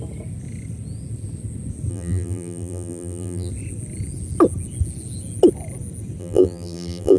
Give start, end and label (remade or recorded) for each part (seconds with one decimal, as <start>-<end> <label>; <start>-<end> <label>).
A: 0.0-1.9 recorded; 1.9-3.5 remade; 3.5-6.2 recorded; 6.2-7.2 remade